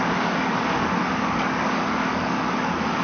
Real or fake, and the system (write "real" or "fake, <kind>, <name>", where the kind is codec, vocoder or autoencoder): fake, codec, DAC